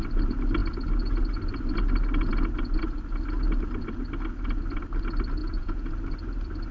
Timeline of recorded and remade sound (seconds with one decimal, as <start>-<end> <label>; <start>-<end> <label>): 0.0-5.4 recorded; 5.4-5.9 remade; 5.9-6.7 recorded